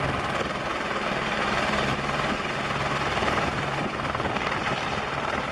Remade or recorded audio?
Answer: remade